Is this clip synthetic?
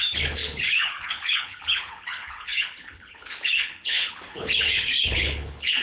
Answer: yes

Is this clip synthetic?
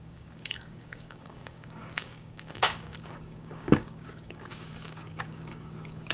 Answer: yes